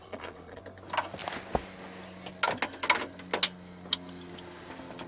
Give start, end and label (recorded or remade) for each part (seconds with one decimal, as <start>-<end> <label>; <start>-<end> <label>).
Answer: 0.0-0.6 remade; 0.6-5.1 recorded